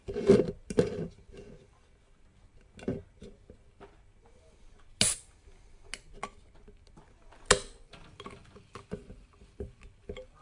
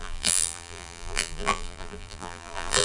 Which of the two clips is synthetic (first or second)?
second